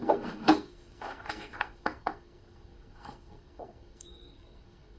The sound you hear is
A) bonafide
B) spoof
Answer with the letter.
B